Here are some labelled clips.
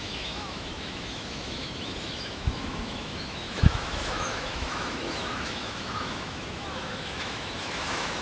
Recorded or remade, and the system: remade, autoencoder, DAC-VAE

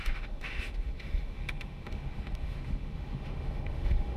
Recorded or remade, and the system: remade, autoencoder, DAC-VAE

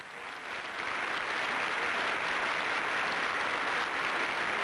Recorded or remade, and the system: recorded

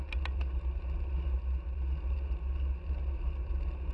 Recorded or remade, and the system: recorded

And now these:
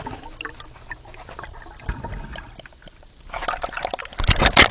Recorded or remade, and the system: recorded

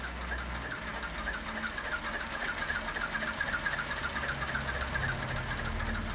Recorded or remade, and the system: recorded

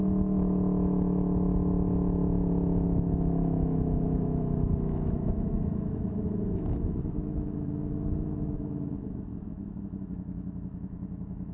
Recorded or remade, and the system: remade, autoencoder, DAC-VAE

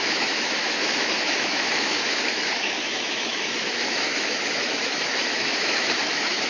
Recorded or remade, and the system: remade, autoencoder, DAC-VAE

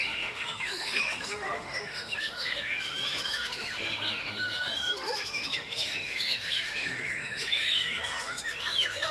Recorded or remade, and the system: remade, autoencoder, DAC-VAE